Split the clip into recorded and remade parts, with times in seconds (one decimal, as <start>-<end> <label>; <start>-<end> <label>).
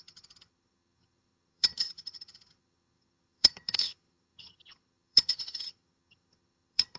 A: 0.0-7.0 remade